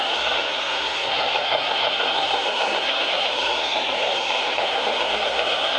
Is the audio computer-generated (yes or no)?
yes